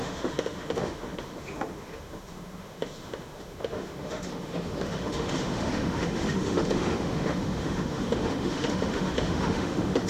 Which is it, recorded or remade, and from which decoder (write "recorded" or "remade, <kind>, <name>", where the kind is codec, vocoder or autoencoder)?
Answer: remade, autoencoder, DAC-VAE